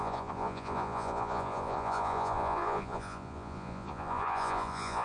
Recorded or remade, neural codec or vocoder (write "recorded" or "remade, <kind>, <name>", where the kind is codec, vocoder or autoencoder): remade, vocoder, Vocos